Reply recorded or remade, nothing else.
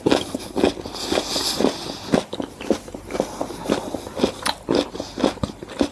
recorded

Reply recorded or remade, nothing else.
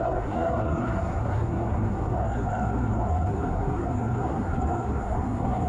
remade